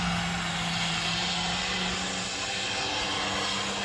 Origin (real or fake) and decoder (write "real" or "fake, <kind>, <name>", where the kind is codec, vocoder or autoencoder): real